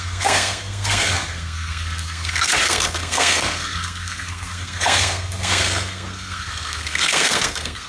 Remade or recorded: remade